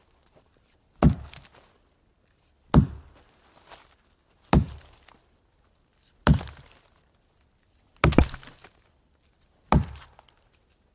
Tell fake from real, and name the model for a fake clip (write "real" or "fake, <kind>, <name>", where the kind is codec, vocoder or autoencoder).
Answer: real